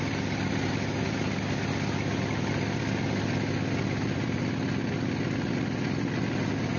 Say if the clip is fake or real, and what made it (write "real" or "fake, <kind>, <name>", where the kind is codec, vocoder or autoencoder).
real